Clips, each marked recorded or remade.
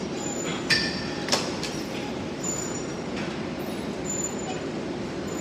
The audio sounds remade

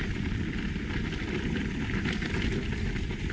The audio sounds recorded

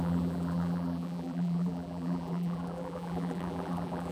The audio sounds remade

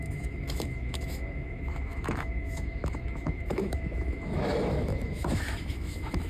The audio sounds remade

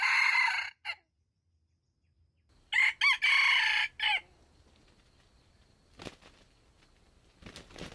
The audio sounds recorded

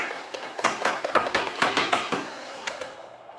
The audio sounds remade